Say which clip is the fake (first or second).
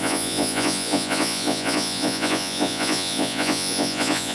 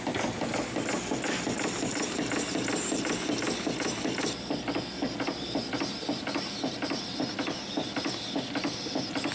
first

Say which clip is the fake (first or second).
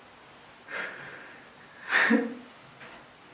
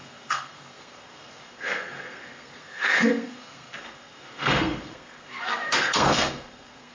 second